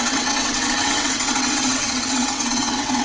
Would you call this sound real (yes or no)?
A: no